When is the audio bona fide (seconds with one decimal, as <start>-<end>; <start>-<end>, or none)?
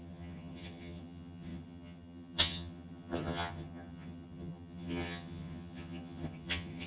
none